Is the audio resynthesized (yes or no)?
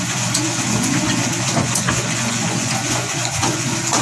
yes